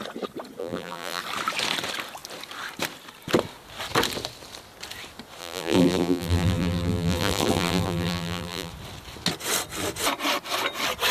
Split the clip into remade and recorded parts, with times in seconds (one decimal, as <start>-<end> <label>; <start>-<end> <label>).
0.0-0.6 recorded; 0.6-1.2 remade; 1.2-5.4 recorded; 5.4-8.7 remade; 8.7-11.1 recorded